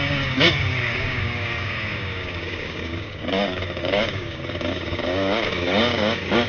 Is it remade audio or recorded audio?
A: remade